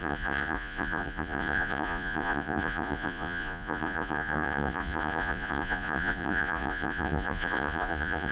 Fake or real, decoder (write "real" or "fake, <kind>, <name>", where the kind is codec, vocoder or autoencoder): fake, vocoder, Vocos